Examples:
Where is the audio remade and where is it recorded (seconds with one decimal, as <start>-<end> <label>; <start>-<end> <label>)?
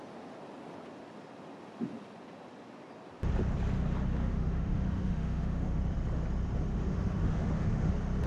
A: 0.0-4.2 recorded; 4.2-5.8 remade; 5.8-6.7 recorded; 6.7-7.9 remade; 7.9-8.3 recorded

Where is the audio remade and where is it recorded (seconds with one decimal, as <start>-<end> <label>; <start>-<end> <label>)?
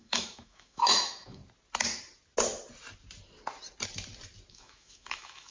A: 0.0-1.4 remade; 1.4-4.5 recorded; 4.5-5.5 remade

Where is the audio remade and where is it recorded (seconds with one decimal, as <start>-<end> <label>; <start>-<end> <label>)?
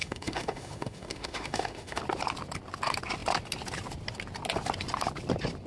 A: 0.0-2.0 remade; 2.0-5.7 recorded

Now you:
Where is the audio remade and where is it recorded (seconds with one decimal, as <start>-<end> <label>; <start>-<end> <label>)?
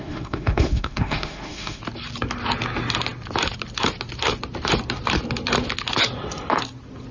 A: 0.0-1.8 remade; 1.8-7.1 recorded